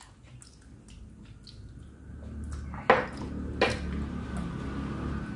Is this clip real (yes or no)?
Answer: yes